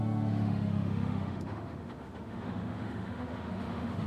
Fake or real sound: fake